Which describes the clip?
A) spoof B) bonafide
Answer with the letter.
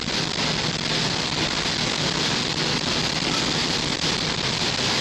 B